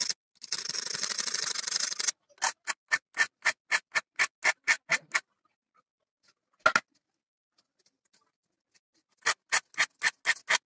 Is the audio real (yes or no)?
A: yes